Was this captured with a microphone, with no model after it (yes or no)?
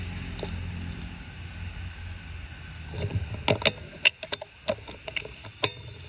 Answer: yes